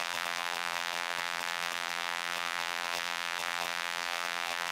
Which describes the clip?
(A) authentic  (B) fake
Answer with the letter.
B